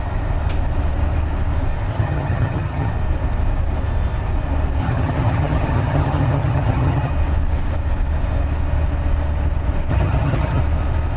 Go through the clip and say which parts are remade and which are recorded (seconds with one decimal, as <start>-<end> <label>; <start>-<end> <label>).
0.0-1.9 recorded; 1.9-2.9 remade; 2.9-4.8 recorded; 4.8-7.1 remade; 7.1-9.9 recorded; 9.9-10.6 remade; 10.6-11.2 recorded